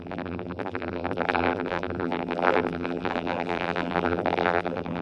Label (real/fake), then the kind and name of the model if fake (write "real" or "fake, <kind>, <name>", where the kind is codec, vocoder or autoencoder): fake, vocoder, BigVGAN v2